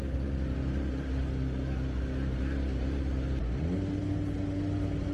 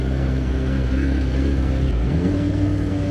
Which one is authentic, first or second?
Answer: first